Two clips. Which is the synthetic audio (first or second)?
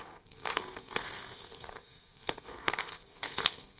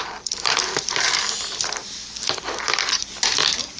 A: first